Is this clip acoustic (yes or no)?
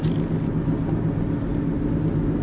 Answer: yes